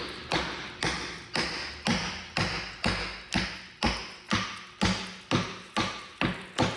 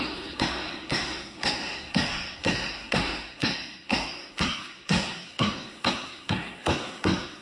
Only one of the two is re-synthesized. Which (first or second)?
second